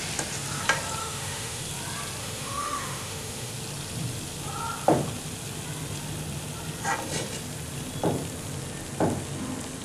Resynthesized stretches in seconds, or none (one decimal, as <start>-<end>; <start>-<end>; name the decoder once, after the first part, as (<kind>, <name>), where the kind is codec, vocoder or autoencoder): 1.0-1.6 (autoencoder, DAC-VAE); 2.2-3.5